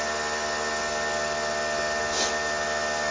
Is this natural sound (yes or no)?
yes